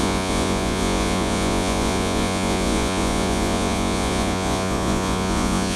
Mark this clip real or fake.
fake